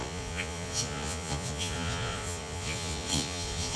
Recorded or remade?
remade